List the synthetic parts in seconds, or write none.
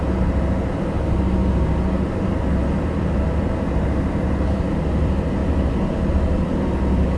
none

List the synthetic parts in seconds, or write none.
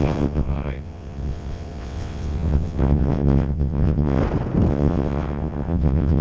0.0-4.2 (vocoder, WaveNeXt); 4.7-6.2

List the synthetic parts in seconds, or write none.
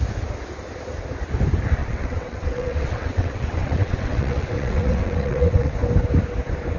1.8-5.7 (vocoder, WaveNeXt)